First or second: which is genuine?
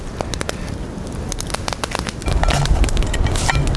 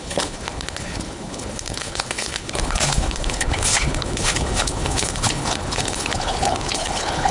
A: first